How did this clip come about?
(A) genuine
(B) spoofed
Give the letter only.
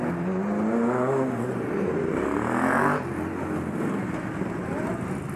A